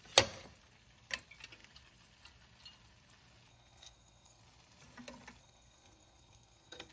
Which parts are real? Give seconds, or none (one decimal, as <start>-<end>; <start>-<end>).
0.0-3.5; 4.4-5.4